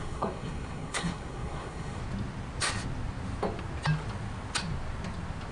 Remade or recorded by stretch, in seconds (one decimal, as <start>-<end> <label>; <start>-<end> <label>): 0.0-2.0 remade; 2.0-5.5 recorded